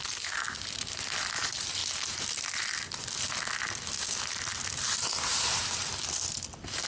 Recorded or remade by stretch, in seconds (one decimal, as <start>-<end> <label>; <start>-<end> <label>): 0.0-6.9 recorded